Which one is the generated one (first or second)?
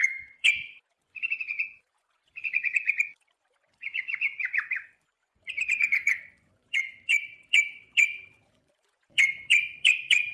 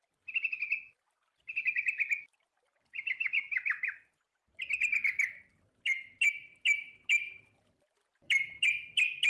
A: first